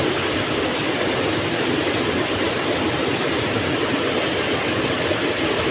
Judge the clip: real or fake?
real